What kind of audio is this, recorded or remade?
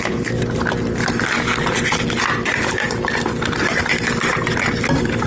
recorded